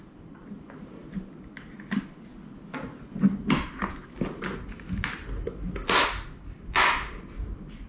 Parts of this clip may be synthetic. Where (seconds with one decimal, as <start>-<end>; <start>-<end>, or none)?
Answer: none